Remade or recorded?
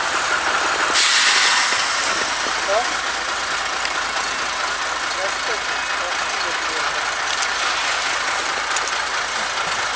recorded